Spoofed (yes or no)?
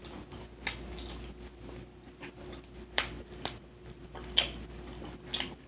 no